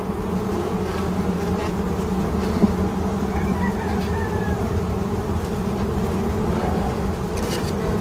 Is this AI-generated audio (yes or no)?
no